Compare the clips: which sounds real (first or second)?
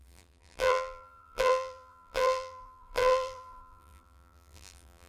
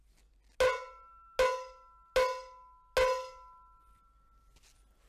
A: second